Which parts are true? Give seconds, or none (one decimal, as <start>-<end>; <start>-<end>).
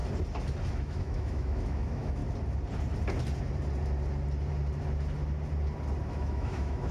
0.0-0.7; 2.2-6.1